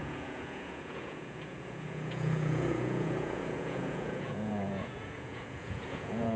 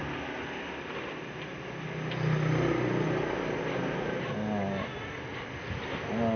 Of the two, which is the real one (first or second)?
second